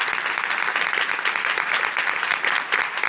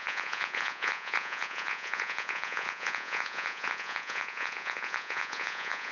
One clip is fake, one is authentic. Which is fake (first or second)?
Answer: second